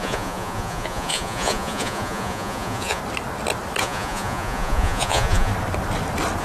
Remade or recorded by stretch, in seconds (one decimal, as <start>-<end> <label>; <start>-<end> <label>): 0.0-3.0 remade; 3.0-3.8 recorded; 3.8-5.5 remade; 5.5-6.4 recorded